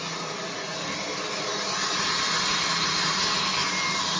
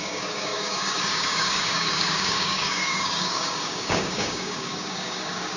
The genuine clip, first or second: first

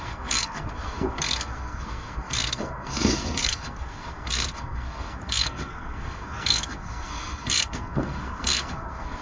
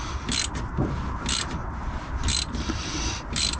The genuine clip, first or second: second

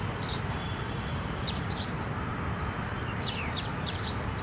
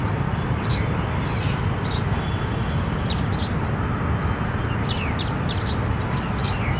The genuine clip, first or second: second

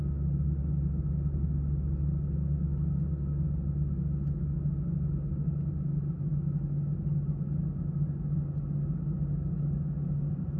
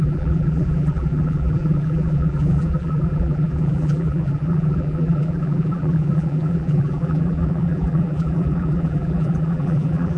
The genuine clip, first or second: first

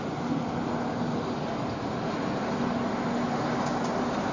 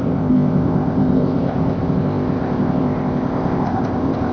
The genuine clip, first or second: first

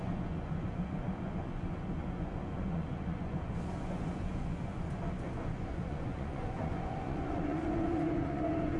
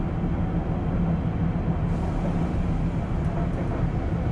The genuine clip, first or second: second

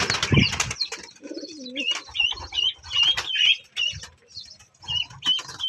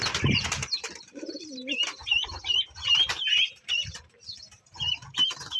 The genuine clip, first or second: first